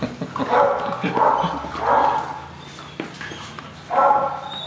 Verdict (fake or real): real